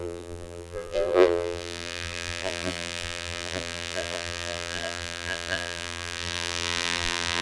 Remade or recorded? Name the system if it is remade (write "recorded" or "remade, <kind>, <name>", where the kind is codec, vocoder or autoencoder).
remade, vocoder, BigVGAN v2